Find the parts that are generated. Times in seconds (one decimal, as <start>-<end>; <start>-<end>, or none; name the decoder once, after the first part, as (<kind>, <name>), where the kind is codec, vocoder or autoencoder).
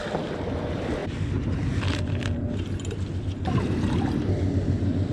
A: none